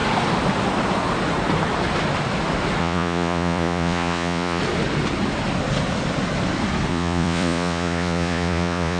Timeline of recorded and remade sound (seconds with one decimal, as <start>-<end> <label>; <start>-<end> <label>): 0.0-2.8 recorded; 2.8-4.6 remade; 4.6-6.9 recorded; 6.9-9.0 remade